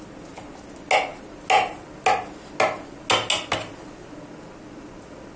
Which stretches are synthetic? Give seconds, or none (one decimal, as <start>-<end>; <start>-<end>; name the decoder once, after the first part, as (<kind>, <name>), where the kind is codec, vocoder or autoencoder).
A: none